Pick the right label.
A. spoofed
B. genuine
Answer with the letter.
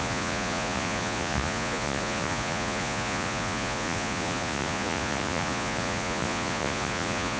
A